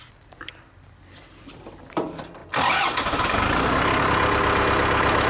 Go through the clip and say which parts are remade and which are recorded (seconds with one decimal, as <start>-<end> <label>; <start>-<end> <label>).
0.0-5.3 recorded